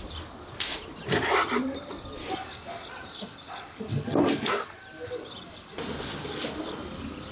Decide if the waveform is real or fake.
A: real